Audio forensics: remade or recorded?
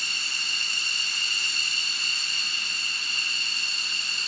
recorded